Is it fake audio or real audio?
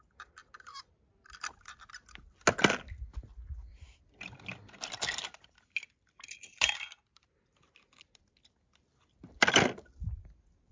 real